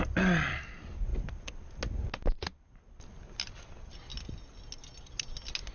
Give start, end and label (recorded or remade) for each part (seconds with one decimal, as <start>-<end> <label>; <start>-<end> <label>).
0.0-5.7 recorded